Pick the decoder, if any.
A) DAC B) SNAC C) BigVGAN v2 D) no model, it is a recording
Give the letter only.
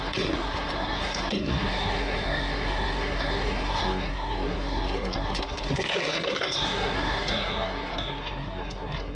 B